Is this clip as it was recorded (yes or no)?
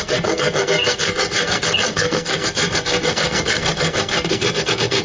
no